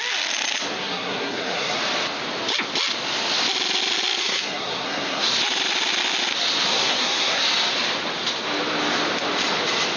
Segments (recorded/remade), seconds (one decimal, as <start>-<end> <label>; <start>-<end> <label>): 0.0-0.8 recorded; 0.8-1.8 remade; 1.8-4.2 recorded; 4.2-5.3 remade; 5.3-6.7 recorded; 6.7-7.4 remade; 7.4-10.0 recorded